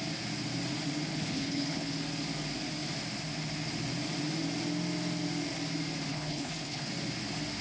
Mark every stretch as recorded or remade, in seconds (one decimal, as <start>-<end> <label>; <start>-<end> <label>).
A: 0.0-1.1 recorded; 1.1-1.9 remade; 1.9-6.1 recorded; 6.1-6.9 remade; 6.9-7.6 recorded